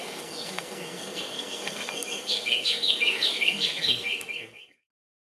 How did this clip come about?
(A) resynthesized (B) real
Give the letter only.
A